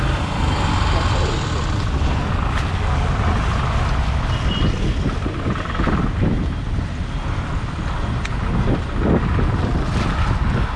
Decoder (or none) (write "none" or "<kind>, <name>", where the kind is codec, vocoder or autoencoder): none